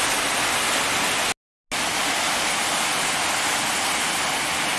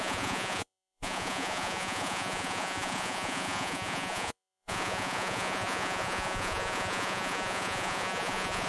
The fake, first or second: second